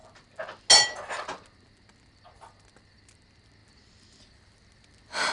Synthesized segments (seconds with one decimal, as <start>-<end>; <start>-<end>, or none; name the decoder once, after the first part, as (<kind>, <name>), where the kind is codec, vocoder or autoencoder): none